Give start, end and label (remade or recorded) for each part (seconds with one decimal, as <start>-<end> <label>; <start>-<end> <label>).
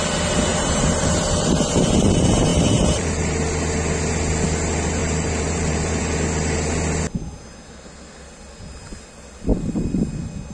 0.0-0.5 recorded; 0.5-2.1 remade; 2.1-2.5 recorded; 2.5-3.4 remade; 3.4-5.0 recorded; 5.0-6.0 remade; 6.0-9.5 recorded; 9.5-10.0 remade; 10.0-10.5 recorded